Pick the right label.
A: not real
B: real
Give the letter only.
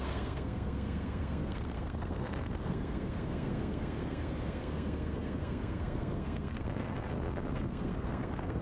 A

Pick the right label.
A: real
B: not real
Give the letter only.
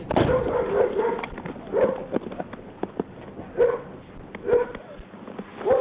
A